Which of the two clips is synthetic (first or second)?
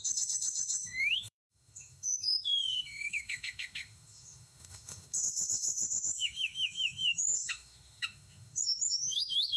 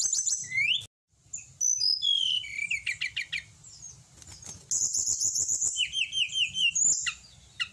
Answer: first